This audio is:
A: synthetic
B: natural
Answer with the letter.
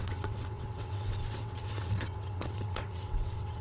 A